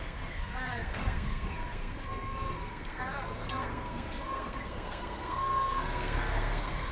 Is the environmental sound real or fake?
fake